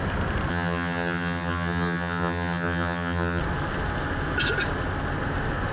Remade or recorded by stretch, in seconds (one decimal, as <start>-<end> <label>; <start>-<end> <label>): 0.0-0.5 recorded; 0.5-3.4 remade; 3.4-5.7 recorded

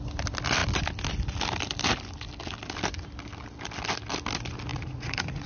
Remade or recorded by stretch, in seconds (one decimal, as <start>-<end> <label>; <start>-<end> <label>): 0.0-4.7 recorded; 4.7-5.5 remade

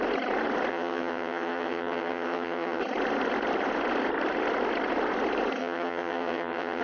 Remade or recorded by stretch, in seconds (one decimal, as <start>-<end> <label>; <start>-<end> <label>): 0.0-0.7 recorded; 0.7-2.8 remade; 2.8-5.6 recorded; 5.6-6.8 remade